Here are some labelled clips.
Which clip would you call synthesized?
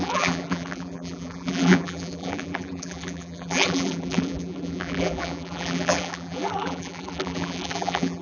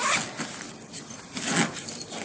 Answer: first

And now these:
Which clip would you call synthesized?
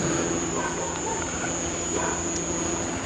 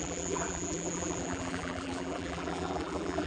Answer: second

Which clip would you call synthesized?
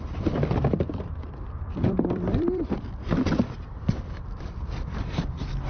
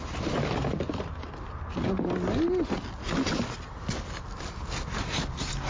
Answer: first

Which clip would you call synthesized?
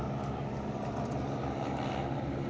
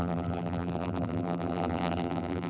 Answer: second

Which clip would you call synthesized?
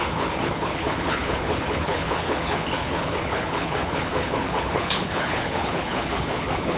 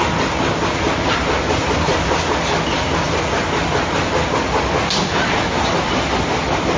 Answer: first